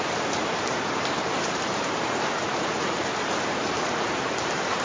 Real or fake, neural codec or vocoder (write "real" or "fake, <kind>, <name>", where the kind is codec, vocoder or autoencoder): fake, vocoder, BigVGAN v2